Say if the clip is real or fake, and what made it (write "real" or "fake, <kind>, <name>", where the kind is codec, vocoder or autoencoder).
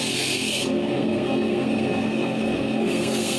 fake, codec, SNAC